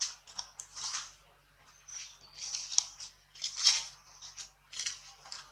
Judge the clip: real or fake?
real